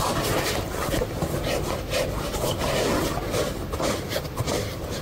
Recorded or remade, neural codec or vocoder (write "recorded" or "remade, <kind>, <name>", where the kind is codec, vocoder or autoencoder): recorded